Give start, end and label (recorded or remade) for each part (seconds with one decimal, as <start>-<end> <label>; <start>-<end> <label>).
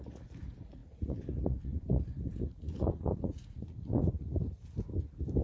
0.0-4.4 remade; 4.4-5.4 recorded